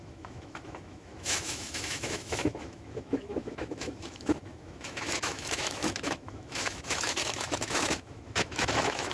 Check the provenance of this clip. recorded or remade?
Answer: remade